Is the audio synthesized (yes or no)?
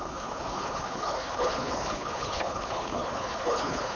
yes